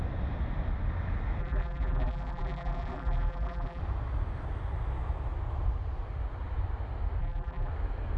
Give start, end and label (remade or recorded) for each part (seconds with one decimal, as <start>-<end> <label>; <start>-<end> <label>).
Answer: 0.0-1.4 recorded; 1.4-3.8 remade; 3.8-7.2 recorded; 7.2-7.7 remade; 7.7-8.2 recorded